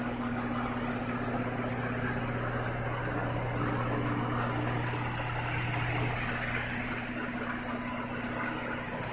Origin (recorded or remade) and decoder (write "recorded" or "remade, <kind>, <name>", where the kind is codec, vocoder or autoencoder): recorded